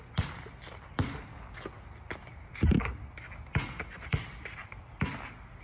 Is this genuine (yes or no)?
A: yes